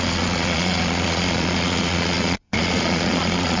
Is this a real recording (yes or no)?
no